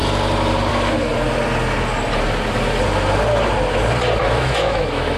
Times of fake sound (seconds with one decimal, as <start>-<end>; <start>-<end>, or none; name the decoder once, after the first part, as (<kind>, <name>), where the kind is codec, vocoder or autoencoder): 0.7-1.1 (autoencoder, DAC-VAE); 4.2-5.2

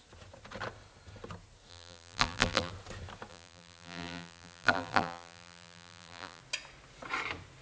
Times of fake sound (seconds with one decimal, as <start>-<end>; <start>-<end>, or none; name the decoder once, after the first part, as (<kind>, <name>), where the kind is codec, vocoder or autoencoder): 1.7-2.7 (vocoder, BigVGAN v2); 3.3-6.4

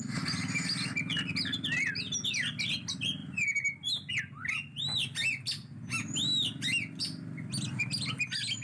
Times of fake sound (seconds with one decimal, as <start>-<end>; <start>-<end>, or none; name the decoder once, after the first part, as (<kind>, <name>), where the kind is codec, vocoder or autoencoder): none

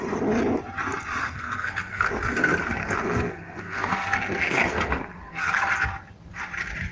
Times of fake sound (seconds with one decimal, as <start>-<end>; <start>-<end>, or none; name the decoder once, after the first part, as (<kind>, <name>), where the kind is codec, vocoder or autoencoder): 1.2-2.1 (codec, SNAC); 2.8-5.6

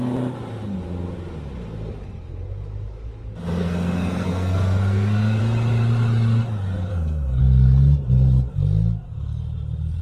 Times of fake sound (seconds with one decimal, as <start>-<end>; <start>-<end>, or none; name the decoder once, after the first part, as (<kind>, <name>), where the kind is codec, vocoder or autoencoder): 3.6-5.4 (codec, SNAC); 6.9-7.4

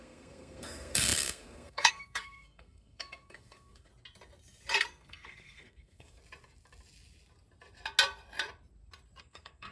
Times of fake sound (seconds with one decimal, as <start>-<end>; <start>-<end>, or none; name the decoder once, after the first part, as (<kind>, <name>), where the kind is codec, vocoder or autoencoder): 0.0-3.9 (codec, SNAC); 4.8-6.2; 9.2-9.7